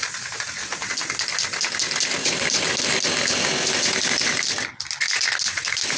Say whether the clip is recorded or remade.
recorded